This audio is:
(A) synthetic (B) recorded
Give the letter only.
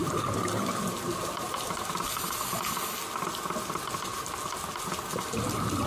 B